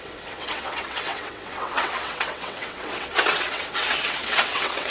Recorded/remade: remade